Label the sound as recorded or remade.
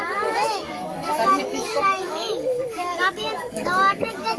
remade